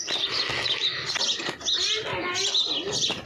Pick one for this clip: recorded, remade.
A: recorded